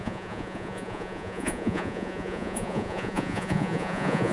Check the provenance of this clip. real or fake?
fake